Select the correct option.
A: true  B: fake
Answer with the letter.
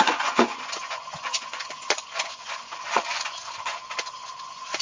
B